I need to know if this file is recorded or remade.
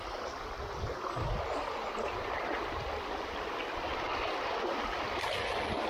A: recorded